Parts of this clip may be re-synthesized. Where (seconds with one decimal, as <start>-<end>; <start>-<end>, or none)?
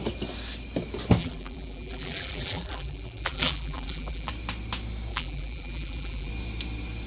1.2-4.3; 5.1-6.3